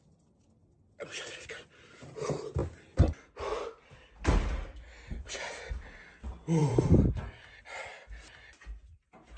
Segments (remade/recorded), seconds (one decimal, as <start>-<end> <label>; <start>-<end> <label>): 0.0-6.6 recorded; 6.6-7.6 remade; 7.6-9.4 recorded